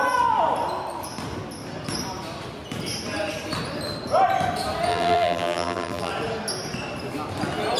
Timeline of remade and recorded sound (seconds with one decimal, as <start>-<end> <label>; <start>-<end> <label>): 0.0-4.9 recorded; 4.9-6.1 remade; 6.1-7.8 recorded